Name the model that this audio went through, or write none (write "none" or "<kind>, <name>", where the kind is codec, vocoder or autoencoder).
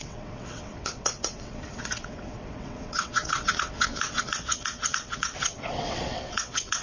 vocoder, WaveNeXt